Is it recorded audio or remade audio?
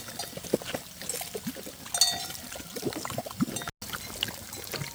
recorded